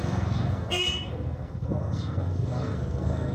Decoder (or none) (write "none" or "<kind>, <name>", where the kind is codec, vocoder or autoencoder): codec, SNAC